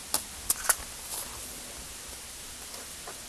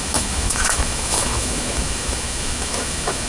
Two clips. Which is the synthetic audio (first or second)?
second